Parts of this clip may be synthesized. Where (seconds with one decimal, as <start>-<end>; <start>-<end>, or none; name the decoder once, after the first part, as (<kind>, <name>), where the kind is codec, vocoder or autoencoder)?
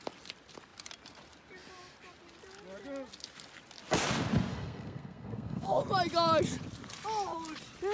4.5-5.8 (codec, SNAC)